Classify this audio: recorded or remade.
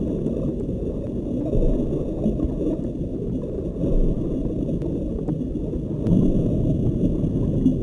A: recorded